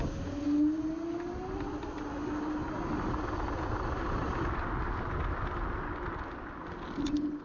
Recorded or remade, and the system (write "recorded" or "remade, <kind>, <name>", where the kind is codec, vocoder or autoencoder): recorded